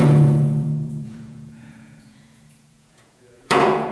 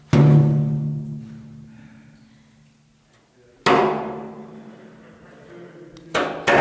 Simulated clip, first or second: first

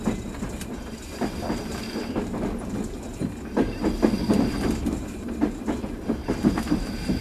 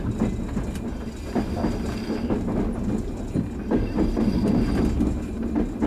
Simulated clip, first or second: first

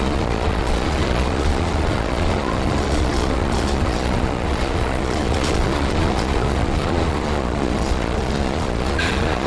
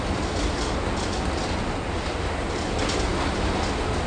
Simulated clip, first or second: first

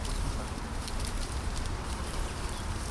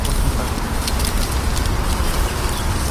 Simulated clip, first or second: first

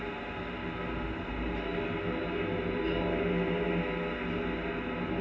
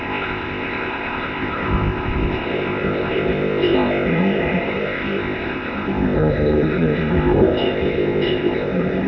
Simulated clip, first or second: second